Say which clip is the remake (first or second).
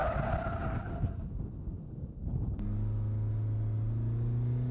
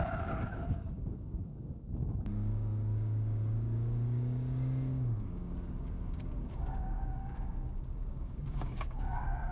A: second